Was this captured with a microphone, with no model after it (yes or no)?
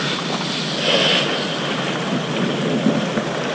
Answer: yes